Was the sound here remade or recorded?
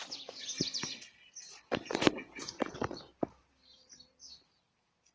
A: recorded